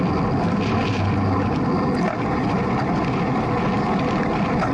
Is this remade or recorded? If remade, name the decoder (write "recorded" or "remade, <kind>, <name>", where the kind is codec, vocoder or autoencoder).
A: recorded